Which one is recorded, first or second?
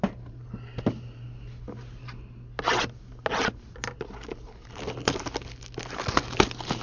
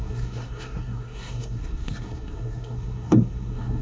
first